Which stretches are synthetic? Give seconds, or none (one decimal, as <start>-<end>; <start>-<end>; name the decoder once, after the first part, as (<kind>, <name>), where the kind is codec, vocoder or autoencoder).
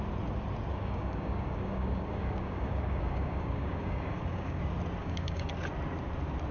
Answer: 0.7-4.6 (codec, DAC); 5.0-5.5